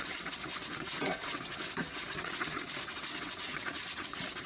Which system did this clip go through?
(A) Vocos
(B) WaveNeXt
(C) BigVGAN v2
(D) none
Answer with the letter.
B